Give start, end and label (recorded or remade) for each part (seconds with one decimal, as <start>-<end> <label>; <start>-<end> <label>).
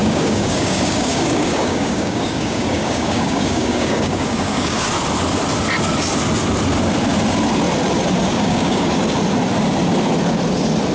0.0-4.9 remade; 4.9-8.3 recorded; 8.3-9.0 remade; 9.0-10.9 recorded